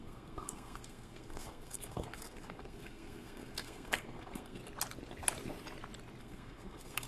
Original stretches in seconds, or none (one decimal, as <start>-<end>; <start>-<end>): 4.6-6.2